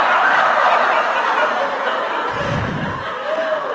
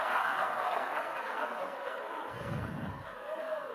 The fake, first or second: second